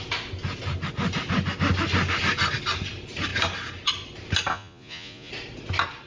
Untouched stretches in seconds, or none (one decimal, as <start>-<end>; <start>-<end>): 0.0-4.5; 5.3-6.1

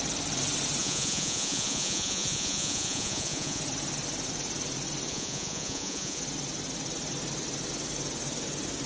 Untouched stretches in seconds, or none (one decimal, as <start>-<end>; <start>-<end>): 0.0-0.8; 3.6-5.1; 6.2-8.9

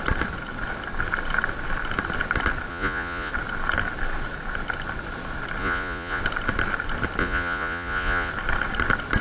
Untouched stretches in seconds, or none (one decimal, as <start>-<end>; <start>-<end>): 0.0-2.7; 3.3-5.6; 6.2-7.2; 8.3-9.2

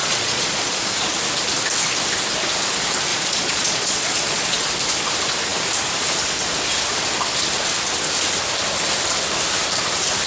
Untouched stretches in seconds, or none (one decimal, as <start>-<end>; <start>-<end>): 1.1-3.1; 4.7-10.3

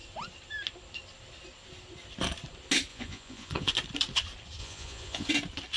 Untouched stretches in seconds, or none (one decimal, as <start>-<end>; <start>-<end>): 0.0-2.9; 3.7-4.6; 5.3-5.8